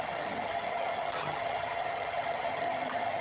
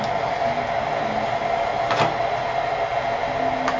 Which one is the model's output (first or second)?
first